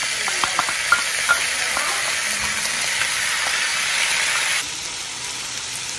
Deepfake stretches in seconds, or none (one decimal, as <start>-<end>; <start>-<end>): none